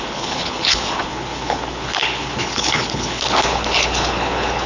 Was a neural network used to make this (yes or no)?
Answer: yes